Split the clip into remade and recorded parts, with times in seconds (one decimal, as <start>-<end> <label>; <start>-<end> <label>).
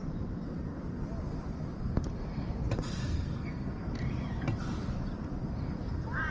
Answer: 0.0-3.0 recorded; 3.0-3.9 remade; 3.9-6.3 recorded